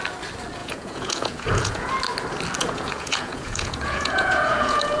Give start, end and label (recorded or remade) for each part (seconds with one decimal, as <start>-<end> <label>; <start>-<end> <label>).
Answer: 0.0-0.6 recorded; 0.6-1.9 remade; 1.9-2.6 recorded; 2.6-5.0 remade